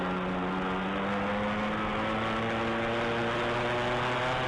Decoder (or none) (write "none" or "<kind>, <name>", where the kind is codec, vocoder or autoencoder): none